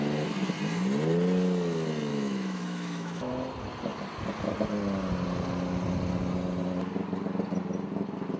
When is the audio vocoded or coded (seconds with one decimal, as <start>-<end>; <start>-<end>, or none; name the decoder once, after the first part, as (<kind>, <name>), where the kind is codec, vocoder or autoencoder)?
2.1-3.3 (autoencoder, DAC-VAE)